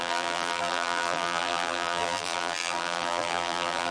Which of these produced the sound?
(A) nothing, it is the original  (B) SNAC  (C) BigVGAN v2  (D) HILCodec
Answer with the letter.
C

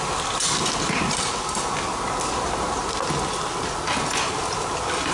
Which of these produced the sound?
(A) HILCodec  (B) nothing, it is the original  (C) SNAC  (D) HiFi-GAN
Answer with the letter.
B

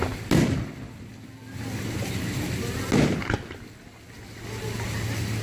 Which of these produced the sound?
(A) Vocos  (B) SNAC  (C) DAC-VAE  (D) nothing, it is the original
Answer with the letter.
D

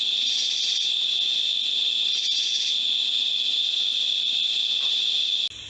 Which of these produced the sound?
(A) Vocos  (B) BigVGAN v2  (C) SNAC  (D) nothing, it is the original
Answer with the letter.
D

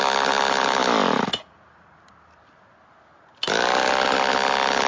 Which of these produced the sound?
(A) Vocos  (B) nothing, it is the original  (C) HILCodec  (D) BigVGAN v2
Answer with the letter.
B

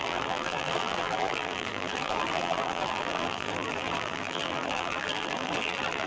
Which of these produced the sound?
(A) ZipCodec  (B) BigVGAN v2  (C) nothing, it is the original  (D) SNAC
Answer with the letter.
B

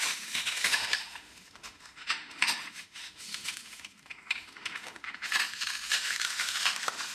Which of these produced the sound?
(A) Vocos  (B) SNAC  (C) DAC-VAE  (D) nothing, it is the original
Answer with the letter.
C